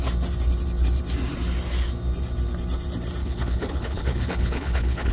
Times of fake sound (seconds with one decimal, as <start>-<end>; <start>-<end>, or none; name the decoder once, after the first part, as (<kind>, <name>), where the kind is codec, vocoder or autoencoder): 3.2-5.1 (codec, HILCodec)